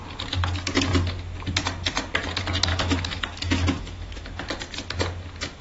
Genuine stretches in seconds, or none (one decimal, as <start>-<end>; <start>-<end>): 0.0-2.7; 4.3-5.6